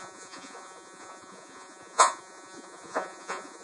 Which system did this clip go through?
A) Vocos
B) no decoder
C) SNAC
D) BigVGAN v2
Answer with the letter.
A